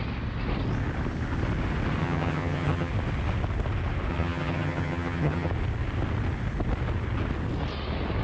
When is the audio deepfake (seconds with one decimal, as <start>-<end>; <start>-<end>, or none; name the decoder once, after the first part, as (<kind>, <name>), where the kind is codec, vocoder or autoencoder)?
2.0-2.9 (vocoder, HiFi-GAN); 4.1-5.5